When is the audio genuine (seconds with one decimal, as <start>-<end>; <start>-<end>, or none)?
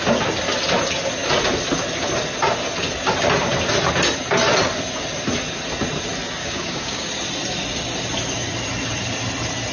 0.0-6.4; 7.1-9.7